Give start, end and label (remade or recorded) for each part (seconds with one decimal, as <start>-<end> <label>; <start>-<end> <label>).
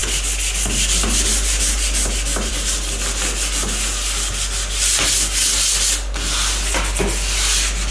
0.0-7.9 recorded